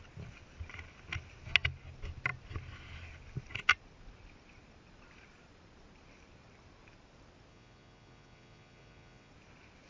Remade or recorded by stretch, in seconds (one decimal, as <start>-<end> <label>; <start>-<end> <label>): 0.0-7.5 recorded; 7.5-9.3 remade; 9.3-9.9 recorded